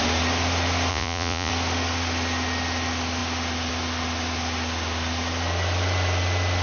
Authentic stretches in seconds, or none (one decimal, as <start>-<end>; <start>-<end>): 0.0-0.9; 1.5-6.6